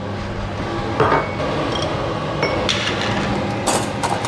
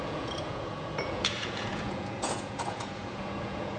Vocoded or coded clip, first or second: second